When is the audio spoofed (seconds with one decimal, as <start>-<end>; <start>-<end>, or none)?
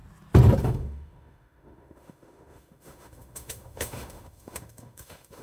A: 0.6-5.4